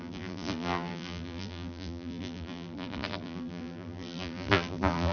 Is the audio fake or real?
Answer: fake